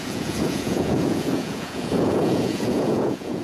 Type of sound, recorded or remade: remade